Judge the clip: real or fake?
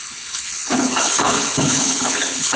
fake